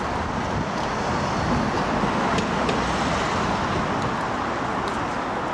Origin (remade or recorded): recorded